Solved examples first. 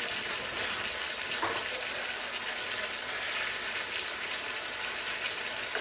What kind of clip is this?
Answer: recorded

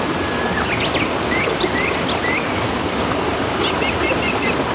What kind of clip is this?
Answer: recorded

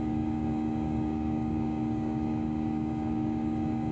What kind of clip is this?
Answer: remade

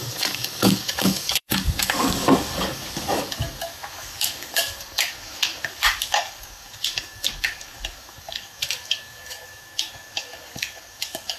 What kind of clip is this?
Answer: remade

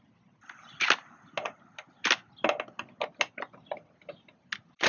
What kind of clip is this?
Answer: recorded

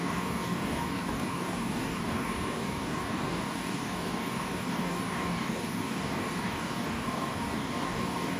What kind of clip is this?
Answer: remade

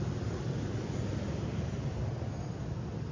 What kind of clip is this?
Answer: recorded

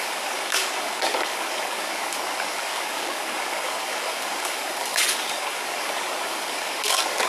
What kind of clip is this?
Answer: remade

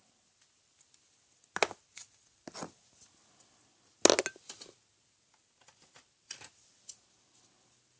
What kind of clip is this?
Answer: recorded